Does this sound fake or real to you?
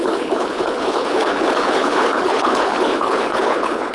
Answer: fake